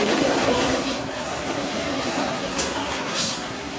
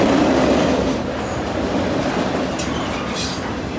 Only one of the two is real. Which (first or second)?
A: second